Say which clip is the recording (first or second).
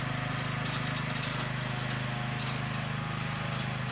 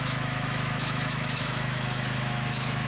first